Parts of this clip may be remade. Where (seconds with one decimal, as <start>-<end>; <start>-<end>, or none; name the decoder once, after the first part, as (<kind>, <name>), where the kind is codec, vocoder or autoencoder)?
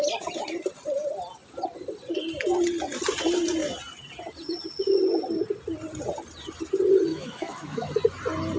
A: 7.1-7.9 (autoencoder, DAC-VAE)